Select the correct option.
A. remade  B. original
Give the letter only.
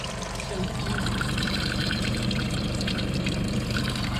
A